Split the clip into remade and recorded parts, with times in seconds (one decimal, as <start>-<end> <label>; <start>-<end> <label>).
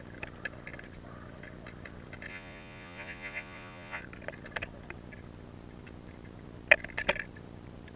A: 0.0-2.3 recorded; 2.3-4.0 remade; 4.0-8.0 recorded